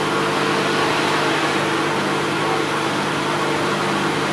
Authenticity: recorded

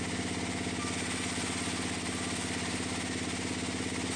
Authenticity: recorded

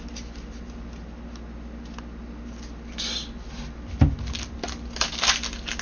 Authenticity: recorded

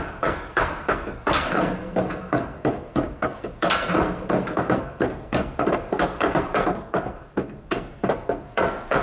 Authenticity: remade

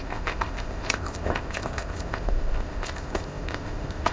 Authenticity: remade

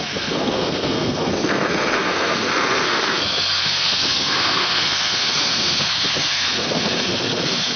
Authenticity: remade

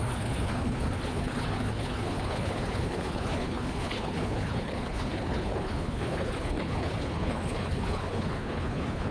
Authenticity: remade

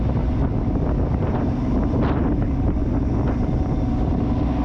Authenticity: recorded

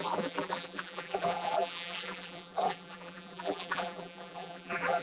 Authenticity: remade